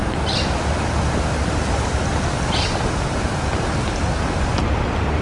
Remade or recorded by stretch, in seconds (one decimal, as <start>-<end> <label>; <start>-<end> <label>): 0.0-5.2 recorded